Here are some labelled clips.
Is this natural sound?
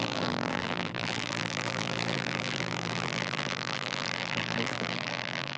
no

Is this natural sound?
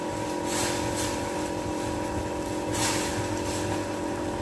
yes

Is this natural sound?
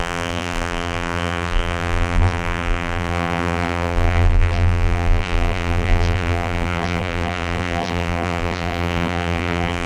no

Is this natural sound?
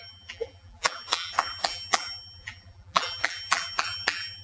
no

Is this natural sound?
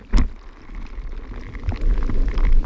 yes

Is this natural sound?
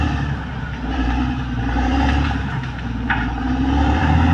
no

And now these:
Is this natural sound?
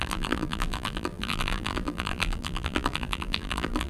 no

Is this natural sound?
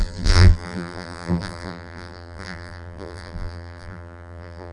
no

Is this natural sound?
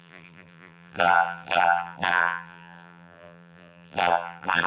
no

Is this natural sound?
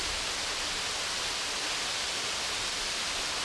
yes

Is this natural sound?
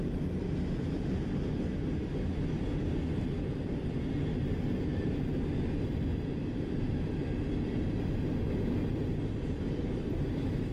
yes